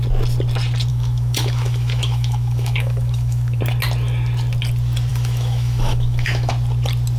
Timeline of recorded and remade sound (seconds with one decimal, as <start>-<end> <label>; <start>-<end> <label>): 0.0-0.9 recorded; 0.9-3.6 remade; 3.6-5.1 recorded; 5.1-6.5 remade; 6.5-7.2 recorded